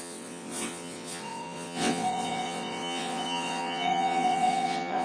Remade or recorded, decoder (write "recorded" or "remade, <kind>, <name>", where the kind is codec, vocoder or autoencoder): remade, vocoder, WaveNeXt